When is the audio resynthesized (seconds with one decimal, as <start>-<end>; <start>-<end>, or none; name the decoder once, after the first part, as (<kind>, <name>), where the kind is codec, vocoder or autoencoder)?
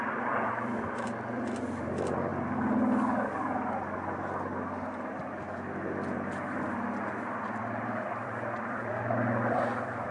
0.0-2.3 (vocoder, BigVGAN v2); 7.2-10.1